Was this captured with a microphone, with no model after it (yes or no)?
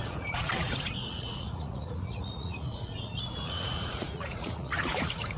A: no